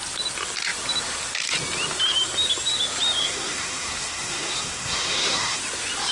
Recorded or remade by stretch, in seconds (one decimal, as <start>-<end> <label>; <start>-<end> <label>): 0.0-3.2 recorded; 3.2-5.6 remade; 5.6-6.1 recorded